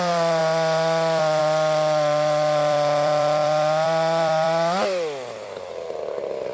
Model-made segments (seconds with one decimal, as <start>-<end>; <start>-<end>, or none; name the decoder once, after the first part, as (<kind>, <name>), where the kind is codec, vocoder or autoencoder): 0.0-6.5 (vocoder, BigVGAN v2)